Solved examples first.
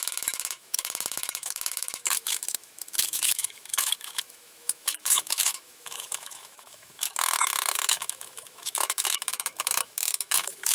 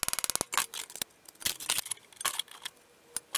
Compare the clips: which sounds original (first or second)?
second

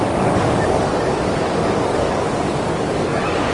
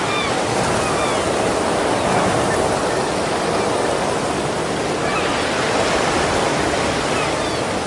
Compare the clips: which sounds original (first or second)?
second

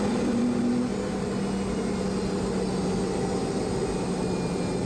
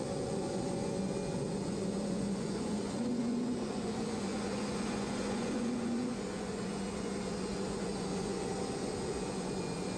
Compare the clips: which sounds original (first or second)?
first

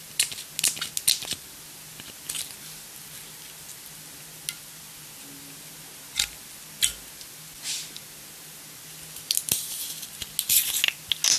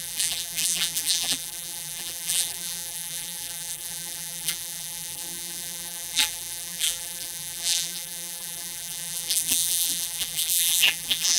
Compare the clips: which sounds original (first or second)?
first